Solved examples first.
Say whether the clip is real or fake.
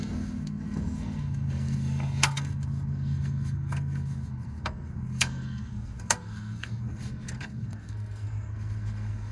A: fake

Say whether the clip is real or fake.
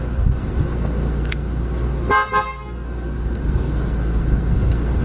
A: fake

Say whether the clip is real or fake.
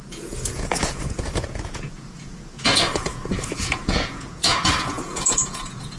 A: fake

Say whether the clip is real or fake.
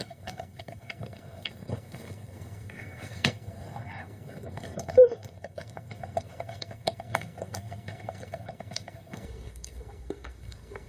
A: fake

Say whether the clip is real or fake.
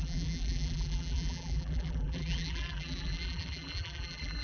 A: fake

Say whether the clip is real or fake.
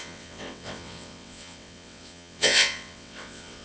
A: fake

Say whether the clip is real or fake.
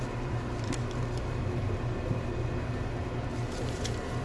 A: fake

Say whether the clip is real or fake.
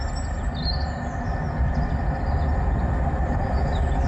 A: real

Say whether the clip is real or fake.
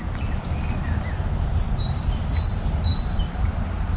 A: real